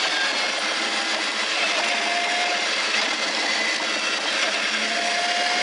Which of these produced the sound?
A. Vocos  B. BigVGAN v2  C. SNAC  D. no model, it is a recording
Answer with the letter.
D